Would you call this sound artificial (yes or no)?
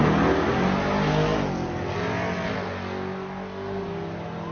no